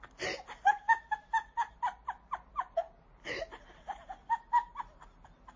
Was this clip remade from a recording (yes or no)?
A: no